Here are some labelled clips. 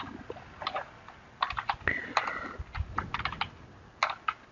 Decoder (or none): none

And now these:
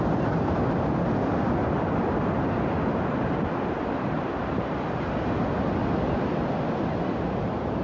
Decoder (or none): none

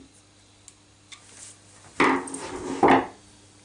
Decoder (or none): none